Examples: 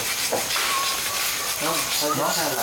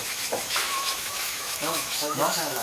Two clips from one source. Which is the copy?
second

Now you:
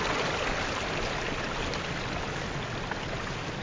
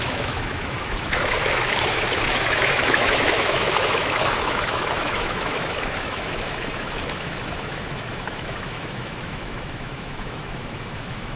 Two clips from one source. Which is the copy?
second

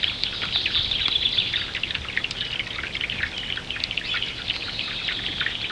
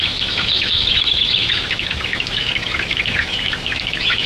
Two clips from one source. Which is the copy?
second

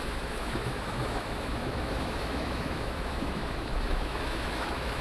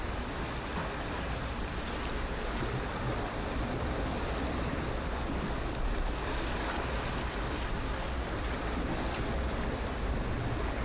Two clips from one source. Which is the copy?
first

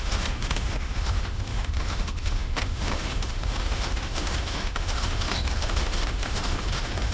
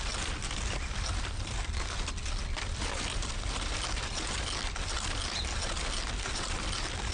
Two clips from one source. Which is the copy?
first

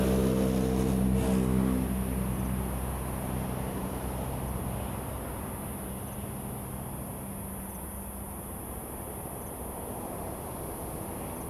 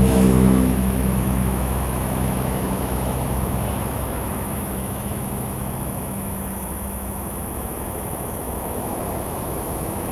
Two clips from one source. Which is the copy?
second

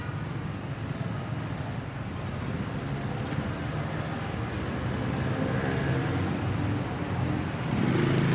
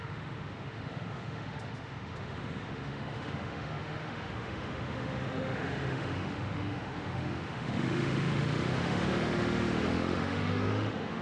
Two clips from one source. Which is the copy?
second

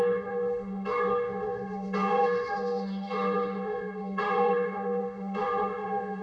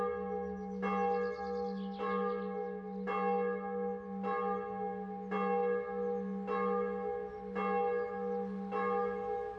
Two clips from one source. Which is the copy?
first